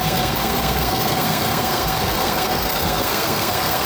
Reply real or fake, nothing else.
fake